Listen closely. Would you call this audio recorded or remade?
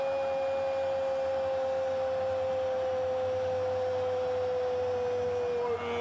recorded